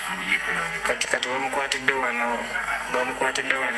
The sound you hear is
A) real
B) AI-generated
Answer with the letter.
B